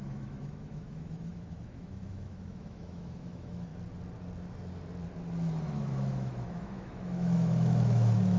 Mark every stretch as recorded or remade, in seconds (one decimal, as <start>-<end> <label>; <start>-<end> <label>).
0.0-3.7 remade; 3.7-5.6 recorded; 5.6-8.4 remade